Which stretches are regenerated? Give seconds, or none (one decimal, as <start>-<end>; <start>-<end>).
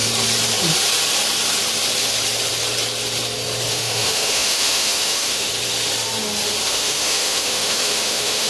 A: 3.7-5.5; 6.7-8.5